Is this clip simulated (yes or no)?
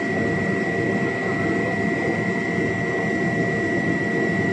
no